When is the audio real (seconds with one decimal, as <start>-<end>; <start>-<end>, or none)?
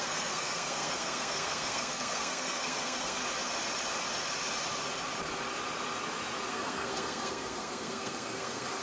3.2-6.5